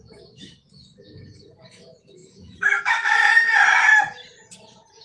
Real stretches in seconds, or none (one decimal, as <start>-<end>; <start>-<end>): 3.9-5.0